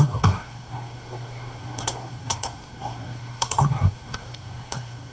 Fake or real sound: fake